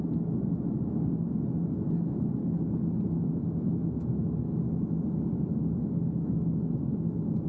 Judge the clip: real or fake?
real